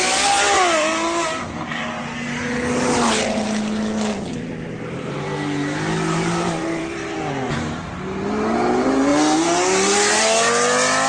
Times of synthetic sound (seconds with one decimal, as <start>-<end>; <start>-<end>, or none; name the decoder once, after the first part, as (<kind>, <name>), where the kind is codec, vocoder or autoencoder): 4.1-5.1 (vocoder, BigVGAN v2); 6.6-7.3